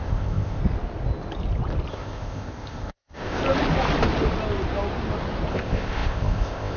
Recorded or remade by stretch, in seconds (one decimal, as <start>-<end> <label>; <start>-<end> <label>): 0.0-0.6 remade; 0.6-1.9 recorded; 1.9-3.4 remade; 3.4-5.5 recorded; 5.5-6.8 remade